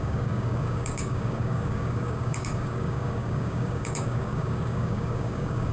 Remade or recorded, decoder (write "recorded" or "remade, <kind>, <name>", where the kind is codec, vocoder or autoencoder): remade, codec, DAC